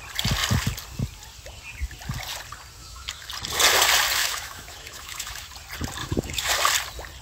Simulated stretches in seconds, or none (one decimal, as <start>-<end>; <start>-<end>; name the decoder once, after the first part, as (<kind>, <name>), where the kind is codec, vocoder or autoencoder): 2.8-3.3 (autoencoder, DAC-VAE); 4.2-5.5; 6.0-6.5

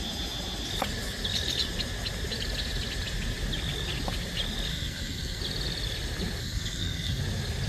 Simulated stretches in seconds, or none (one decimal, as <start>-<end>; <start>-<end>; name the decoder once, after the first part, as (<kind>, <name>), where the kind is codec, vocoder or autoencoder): 4.7-5.4 (codec, SNAC); 6.4-7.2

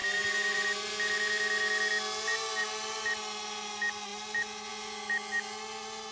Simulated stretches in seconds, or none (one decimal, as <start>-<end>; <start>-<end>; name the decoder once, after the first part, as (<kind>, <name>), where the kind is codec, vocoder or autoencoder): 0.0-0.9 (vocoder, BigVGAN v2)

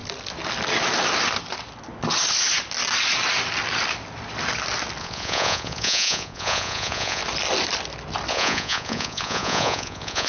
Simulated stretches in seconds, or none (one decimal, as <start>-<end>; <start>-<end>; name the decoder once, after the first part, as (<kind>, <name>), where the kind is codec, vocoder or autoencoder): 5.0-7.2 (vocoder, Vocos); 8.3-10.3

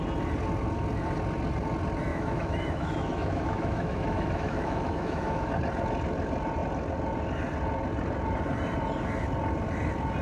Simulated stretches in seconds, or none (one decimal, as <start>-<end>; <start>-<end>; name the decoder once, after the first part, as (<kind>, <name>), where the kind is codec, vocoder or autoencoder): 2.1-5.5 (autoencoder, DAC-VAE)

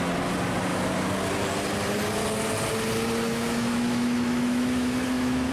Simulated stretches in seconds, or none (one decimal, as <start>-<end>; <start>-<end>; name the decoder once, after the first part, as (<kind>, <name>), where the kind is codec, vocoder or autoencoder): 3.3-5.5 (autoencoder, DAC-VAE)

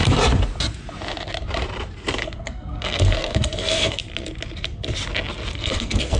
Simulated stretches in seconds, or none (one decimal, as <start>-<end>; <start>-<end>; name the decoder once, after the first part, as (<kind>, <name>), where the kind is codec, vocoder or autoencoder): 2.2-4.0 (codec, SNAC); 5.5-6.2